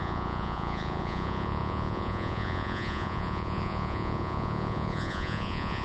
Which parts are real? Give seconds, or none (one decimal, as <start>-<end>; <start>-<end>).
none